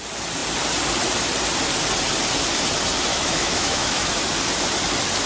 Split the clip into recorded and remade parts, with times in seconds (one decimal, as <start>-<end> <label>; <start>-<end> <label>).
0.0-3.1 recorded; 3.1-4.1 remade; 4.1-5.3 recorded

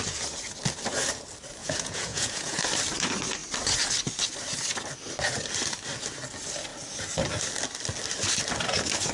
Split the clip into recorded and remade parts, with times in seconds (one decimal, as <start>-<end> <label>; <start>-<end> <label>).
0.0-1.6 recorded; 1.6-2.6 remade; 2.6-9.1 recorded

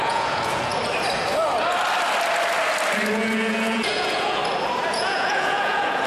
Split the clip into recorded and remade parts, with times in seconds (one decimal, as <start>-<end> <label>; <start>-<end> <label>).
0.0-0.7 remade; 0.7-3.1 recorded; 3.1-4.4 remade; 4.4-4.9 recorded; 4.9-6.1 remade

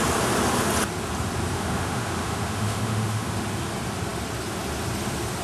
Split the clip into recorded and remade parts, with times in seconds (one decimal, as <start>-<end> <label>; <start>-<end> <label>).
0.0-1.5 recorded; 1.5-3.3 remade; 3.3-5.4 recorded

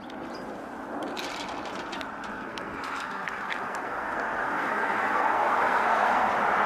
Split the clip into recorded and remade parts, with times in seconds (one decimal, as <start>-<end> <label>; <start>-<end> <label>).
0.0-2.3 recorded; 2.3-6.3 remade; 6.3-6.7 recorded

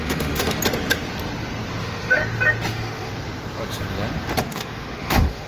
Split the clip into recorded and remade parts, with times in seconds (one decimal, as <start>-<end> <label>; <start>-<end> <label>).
0.0-0.6 remade; 0.6-1.8 recorded; 1.8-2.2 remade; 2.2-2.7 recorded; 2.7-3.1 remade; 3.1-4.4 recorded; 4.4-5.5 remade